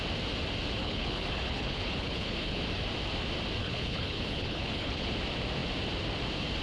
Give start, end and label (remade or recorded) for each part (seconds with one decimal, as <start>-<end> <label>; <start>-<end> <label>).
0.0-0.8 recorded; 0.8-2.6 remade; 2.6-3.6 recorded; 3.6-5.1 remade; 5.1-6.6 recorded